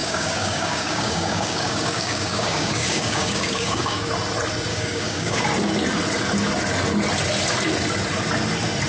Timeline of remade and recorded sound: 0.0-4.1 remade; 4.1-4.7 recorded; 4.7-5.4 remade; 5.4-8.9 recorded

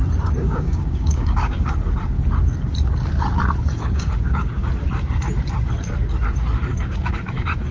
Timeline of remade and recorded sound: 0.0-0.4 recorded; 0.4-1.7 remade; 1.7-3.8 recorded; 3.8-4.7 remade; 4.7-6.7 recorded; 6.7-7.2 remade; 7.2-7.7 recorded

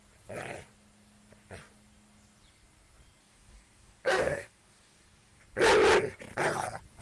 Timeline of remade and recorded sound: 0.0-3.2 recorded; 3.2-5.4 remade; 5.4-7.0 recorded